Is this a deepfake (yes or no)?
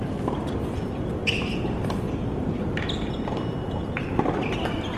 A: no